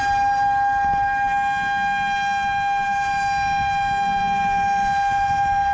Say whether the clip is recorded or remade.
recorded